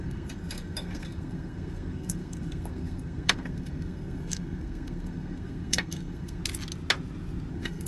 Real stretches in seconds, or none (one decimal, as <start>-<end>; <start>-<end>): 6.4-7.5